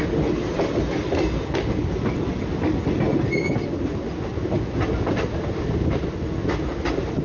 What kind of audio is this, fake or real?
real